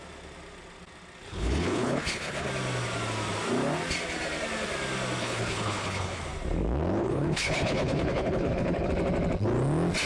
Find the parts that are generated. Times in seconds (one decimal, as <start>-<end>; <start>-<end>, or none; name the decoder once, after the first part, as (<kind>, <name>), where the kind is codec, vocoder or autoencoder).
1.3-2.5 (codec, HILCodec); 5.2-6.2; 7.0-8.9